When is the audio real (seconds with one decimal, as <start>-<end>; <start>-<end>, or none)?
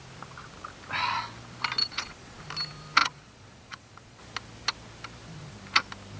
0.0-1.8; 2.4-3.0; 4.2-6.2